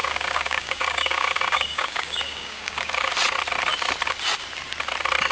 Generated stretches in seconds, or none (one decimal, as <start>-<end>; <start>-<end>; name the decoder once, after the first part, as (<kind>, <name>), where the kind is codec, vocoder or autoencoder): 0.0-3.1 (codec, DAC)